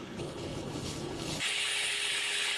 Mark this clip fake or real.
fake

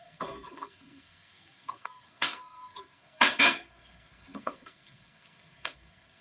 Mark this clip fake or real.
fake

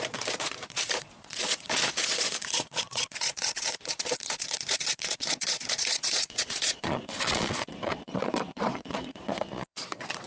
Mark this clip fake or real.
fake